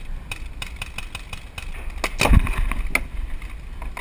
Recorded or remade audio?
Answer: recorded